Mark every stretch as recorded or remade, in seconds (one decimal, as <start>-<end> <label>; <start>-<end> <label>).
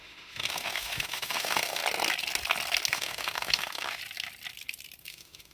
0.0-1.8 remade; 1.8-2.9 recorded; 2.9-4.0 remade; 4.0-5.0 recorded; 5.0-5.5 remade